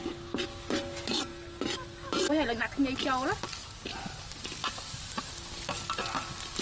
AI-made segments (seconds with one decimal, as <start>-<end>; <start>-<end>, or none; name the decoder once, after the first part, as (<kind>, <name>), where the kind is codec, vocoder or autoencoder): 4.6-5.3 (vocoder, BigVGAN v2)